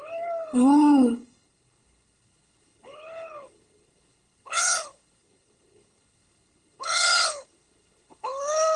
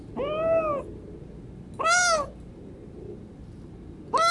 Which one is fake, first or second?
first